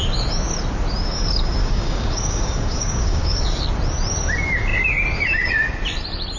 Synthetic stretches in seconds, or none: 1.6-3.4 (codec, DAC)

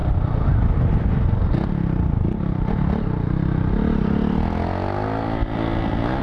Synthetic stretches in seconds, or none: none

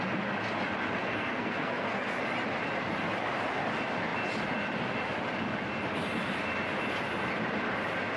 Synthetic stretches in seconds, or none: 1.0-2.2 (codec, SNAC)